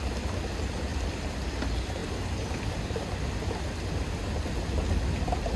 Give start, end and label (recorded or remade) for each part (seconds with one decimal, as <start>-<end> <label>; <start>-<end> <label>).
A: 0.0-5.6 recorded